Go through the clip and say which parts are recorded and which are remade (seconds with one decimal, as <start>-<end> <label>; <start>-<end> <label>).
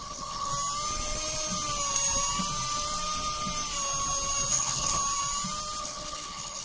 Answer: 0.0-0.5 remade; 0.5-4.5 recorded; 4.5-5.0 remade; 5.0-5.8 recorded; 5.8-6.6 remade